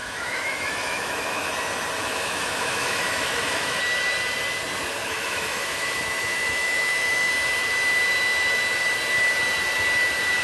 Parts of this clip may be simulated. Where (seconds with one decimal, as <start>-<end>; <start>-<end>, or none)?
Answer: 0.0-1.5; 2.0-3.8; 5.0-7.3